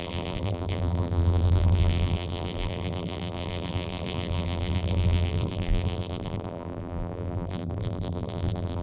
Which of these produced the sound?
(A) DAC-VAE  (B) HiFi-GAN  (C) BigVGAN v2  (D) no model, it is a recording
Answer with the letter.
C